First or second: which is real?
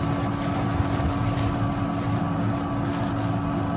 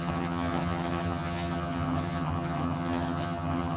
first